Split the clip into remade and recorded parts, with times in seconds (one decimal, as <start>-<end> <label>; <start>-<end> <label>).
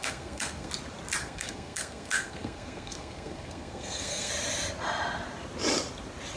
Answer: 0.0-0.7 remade; 0.7-1.2 recorded; 1.2-4.3 remade; 4.3-6.4 recorded